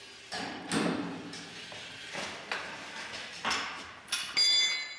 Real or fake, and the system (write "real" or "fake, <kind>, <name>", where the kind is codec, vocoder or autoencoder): real